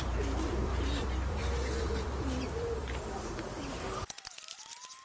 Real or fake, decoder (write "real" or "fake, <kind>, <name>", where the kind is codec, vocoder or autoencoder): fake, vocoder, BigVGAN v2